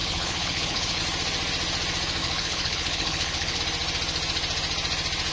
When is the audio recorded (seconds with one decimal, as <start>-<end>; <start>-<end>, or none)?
1.0-2.2; 3.6-5.3